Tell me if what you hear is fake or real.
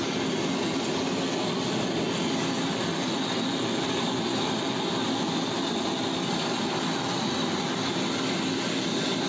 fake